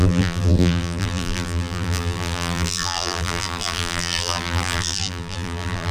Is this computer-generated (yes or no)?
yes